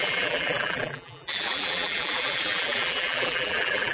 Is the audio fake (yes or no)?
yes